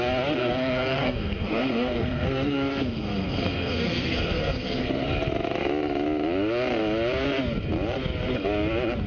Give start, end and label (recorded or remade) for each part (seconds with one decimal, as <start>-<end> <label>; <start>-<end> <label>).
0.0-0.4 recorded; 0.4-4.9 remade; 4.9-9.1 recorded